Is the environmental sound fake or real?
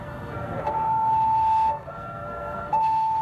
fake